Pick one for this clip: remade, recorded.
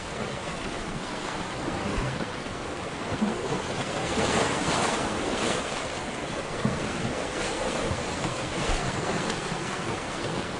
remade